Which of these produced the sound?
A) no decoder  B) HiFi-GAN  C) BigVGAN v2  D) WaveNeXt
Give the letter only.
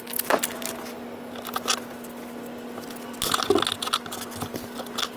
A